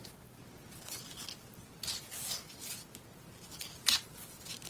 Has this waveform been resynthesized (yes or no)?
no